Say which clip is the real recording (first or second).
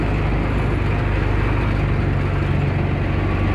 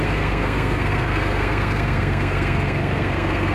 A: first